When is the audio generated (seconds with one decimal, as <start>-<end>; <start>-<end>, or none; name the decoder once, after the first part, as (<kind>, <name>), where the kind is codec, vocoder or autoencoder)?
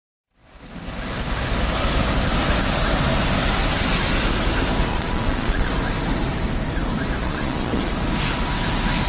4.9-5.7 (vocoder, Vocos); 7.2-7.9